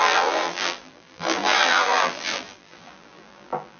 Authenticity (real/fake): fake